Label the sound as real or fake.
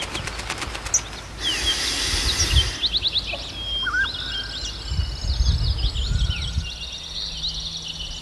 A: real